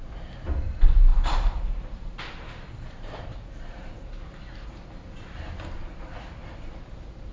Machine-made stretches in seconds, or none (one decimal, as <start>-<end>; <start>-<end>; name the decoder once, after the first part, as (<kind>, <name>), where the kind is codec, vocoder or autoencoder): 1.1-4.4 (vocoder, BigVGAN v2)